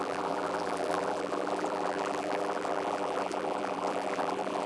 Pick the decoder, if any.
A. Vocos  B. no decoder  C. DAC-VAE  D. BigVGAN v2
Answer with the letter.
D